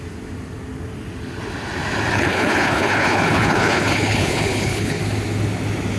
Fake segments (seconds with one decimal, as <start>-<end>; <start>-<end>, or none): 2.1-5.0